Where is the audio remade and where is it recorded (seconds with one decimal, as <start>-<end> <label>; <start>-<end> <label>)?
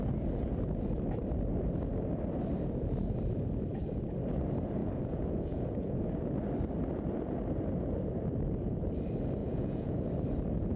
0.0-4.8 recorded; 4.8-6.3 remade; 6.3-9.4 recorded; 9.4-10.1 remade; 10.1-10.8 recorded